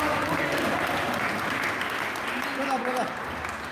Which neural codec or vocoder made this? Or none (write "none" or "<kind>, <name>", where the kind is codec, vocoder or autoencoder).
none